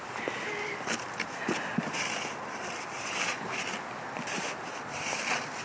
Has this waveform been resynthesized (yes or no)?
no